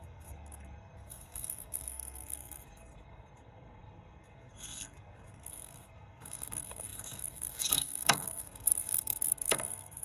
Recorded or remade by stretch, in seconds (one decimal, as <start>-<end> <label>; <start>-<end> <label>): 0.0-10.0 remade